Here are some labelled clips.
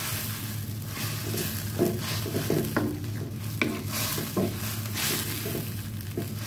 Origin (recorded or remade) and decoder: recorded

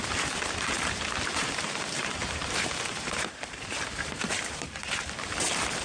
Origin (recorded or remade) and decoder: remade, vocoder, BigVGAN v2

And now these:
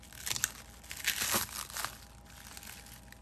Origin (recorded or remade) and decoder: recorded